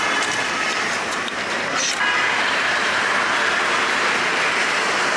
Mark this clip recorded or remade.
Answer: remade